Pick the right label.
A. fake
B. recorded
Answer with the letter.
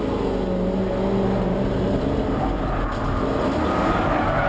B